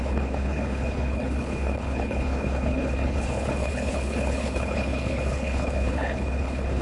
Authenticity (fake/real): fake